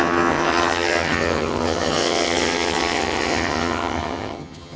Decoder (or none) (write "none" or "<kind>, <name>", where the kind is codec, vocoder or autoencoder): vocoder, HiFi-GAN